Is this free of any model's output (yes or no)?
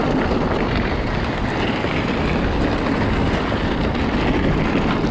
yes